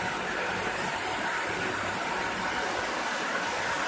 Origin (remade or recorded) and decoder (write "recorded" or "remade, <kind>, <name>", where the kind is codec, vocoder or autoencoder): recorded